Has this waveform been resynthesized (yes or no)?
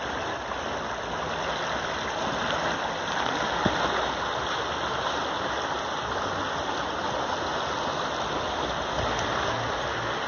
no